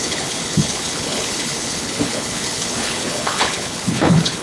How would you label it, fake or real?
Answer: fake